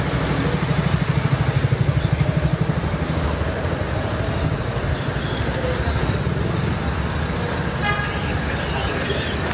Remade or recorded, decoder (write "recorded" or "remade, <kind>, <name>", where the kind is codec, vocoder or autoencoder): recorded